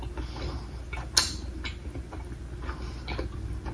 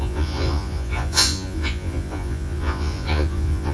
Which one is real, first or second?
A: first